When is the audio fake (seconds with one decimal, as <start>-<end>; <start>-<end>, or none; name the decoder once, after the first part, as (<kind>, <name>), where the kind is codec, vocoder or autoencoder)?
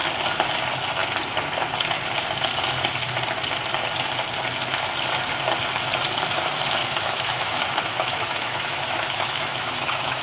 6.8-10.2 (autoencoder, DAC-VAE)